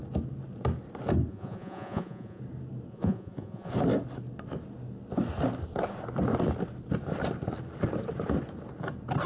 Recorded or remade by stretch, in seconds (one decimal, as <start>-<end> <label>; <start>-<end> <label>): 0.0-1.3 recorded; 1.3-2.4 remade; 2.4-2.9 recorded; 2.9-3.7 remade; 3.7-9.3 recorded